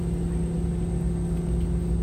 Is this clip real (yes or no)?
yes